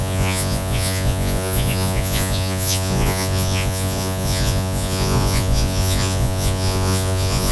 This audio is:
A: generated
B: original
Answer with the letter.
A